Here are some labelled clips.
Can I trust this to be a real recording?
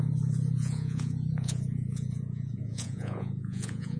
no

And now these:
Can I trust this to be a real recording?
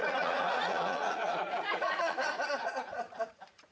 no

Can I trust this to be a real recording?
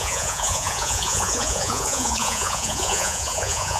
no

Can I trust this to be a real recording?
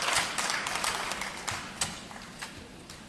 yes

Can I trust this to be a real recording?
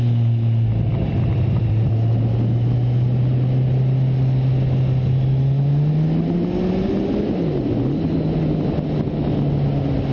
yes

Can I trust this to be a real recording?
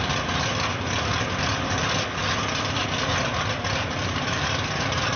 yes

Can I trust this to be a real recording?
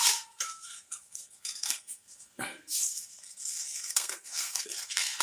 no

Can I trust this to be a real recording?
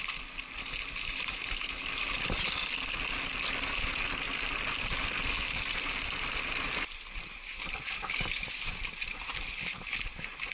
yes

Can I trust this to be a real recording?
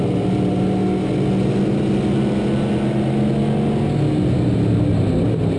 yes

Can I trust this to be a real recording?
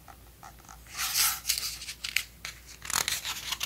yes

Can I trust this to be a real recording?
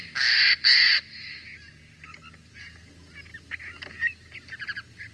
yes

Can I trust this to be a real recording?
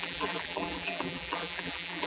no